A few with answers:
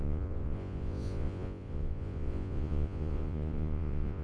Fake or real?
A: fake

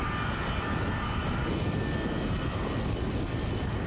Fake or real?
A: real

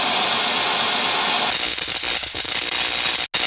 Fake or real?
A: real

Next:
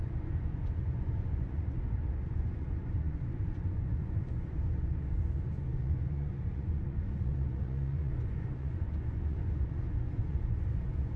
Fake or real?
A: fake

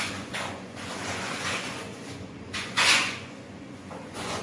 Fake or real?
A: fake